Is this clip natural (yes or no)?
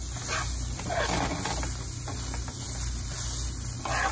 yes